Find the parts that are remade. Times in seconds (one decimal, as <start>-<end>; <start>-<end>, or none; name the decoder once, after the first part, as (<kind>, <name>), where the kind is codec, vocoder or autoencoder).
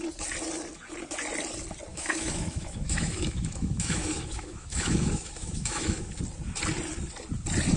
1.9-6.2 (autoencoder, DAC-VAE)